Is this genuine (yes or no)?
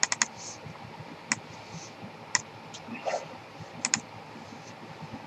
yes